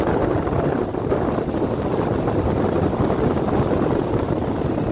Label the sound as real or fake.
real